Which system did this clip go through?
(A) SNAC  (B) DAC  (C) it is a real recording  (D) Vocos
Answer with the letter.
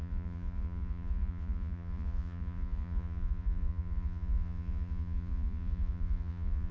D